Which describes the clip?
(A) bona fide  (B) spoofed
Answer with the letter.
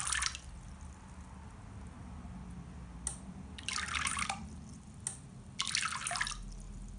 A